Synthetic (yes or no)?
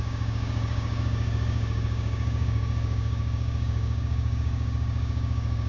yes